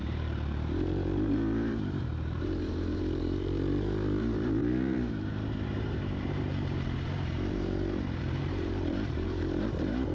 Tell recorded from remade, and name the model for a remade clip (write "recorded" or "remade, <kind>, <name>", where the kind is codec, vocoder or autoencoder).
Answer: remade, vocoder, BigVGAN v2